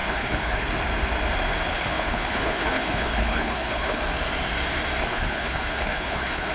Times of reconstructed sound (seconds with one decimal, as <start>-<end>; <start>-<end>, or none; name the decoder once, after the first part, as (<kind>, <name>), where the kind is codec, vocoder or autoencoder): 0.0-0.7 (codec, HILCodec); 1.7-4.0; 5.0-6.5